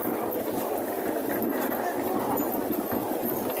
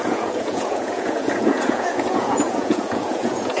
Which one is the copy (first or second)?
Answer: second